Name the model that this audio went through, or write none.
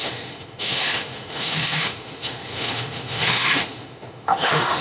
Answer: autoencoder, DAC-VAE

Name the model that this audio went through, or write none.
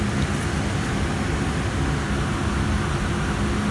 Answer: none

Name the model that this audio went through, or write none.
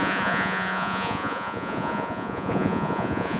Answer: vocoder, Vocos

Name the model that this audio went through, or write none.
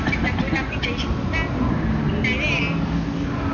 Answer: none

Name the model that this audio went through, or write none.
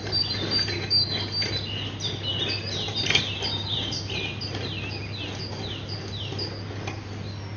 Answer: vocoder, BigVGAN v2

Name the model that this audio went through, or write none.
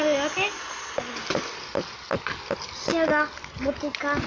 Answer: none